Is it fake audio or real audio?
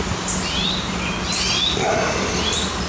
real